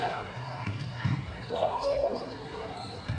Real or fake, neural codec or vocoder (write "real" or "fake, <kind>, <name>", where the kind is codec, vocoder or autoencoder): fake, codec, SNAC